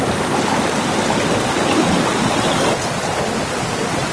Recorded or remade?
recorded